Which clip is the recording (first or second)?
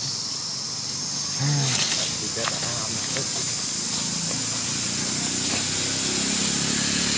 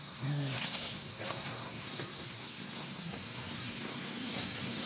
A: first